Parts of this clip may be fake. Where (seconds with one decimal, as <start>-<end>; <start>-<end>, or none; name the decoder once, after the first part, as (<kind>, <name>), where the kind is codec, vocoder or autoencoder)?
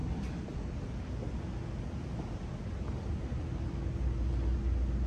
none